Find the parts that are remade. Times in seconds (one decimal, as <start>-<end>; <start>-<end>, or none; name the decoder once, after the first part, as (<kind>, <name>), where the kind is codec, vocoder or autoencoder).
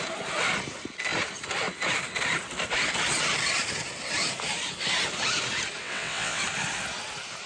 5.8-6.4 (vocoder, WaveNeXt)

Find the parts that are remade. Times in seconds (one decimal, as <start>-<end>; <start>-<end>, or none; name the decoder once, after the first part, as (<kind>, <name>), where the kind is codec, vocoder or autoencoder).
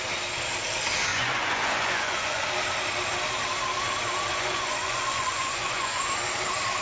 1.1-2.4 (vocoder, Vocos); 4.3-6.0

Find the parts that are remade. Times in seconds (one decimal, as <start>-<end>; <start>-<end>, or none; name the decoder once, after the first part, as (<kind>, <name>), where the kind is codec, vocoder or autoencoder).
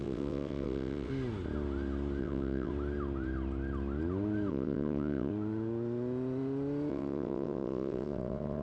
0.0-1.1 (vocoder, WaveNeXt); 2.2-2.7; 4.5-5.3; 6.9-8.6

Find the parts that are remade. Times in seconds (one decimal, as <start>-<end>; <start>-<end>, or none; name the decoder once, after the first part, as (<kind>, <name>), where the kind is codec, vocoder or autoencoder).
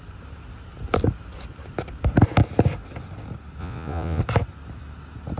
3.6-4.2 (vocoder, Vocos)